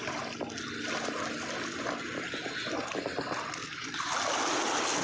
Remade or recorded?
recorded